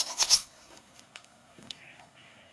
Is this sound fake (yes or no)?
yes